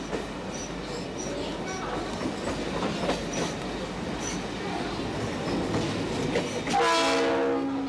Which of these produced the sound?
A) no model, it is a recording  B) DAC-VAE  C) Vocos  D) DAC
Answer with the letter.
A